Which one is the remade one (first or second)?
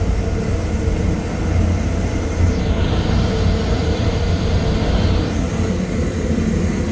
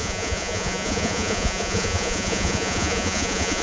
second